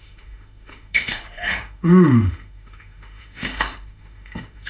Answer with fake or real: fake